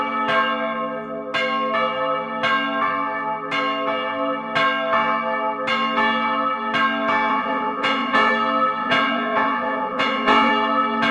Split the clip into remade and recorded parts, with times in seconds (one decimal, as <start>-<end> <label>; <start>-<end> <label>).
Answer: 0.0-7.3 recorded; 7.3-8.3 remade; 8.3-8.8 recorded; 8.8-10.5 remade; 10.5-11.1 recorded